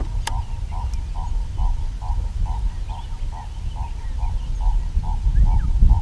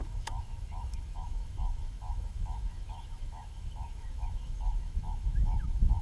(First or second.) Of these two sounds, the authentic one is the first